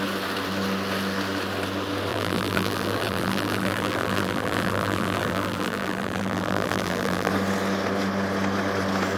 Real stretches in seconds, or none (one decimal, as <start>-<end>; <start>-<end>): 0.0-2.1; 7.3-9.2